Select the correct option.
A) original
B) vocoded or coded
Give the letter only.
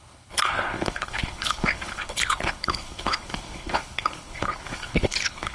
B